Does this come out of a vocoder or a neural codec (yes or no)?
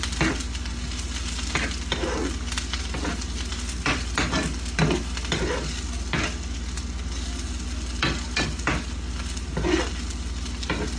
no